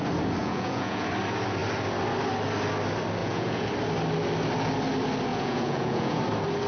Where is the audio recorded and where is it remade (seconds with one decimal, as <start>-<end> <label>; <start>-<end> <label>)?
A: 0.0-0.4 recorded; 0.4-1.1 remade; 1.1-3.2 recorded; 3.2-3.7 remade; 3.7-5.3 recorded; 5.3-6.2 remade; 6.2-6.7 recorded